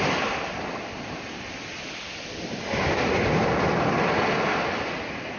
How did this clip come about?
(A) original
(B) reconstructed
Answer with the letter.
A